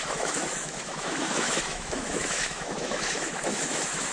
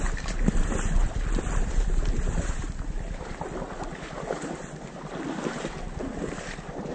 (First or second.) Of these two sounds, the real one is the second